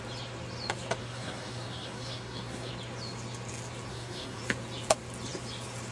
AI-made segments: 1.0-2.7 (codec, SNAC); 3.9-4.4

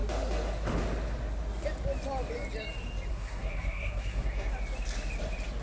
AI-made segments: 3.1-4.5 (codec, SNAC)

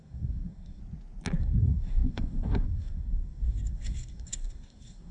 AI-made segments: 0.0-0.8 (codec, SNAC); 1.4-5.1